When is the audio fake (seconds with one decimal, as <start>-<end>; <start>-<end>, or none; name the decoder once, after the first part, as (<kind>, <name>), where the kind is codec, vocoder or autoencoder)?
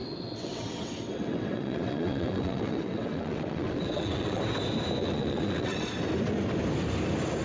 0.0-4.4 (vocoder, WaveNeXt); 5.0-5.9